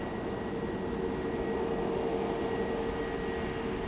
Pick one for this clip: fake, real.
real